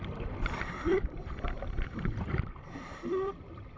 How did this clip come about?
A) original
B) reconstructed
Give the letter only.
B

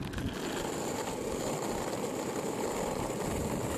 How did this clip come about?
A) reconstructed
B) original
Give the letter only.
A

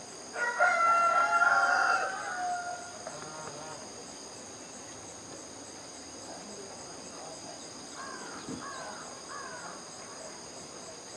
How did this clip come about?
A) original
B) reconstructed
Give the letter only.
A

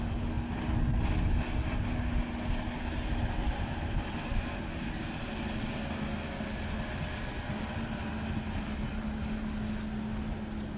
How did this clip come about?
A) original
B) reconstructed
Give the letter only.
A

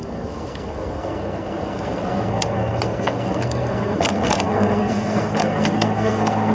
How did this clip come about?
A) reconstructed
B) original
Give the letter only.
A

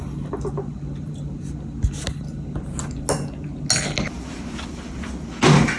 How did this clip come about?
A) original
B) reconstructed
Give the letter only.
A